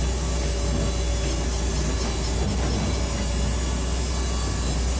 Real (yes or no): yes